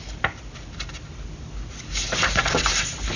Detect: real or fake real